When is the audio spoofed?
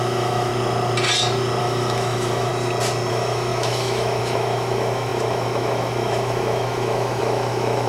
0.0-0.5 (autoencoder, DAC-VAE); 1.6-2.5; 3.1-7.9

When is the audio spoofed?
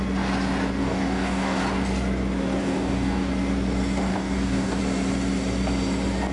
0.8-1.6 (codec, DAC); 2.6-3.3; 4.1-4.8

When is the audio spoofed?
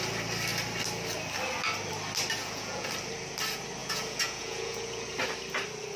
2.4-2.9 (vocoder, Vocos); 3.8-5.2